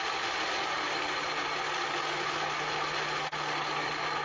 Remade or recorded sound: recorded